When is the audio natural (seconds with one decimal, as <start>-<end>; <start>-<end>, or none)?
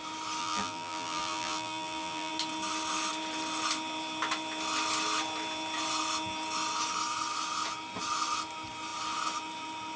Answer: 0.0-0.4; 2.3-10.0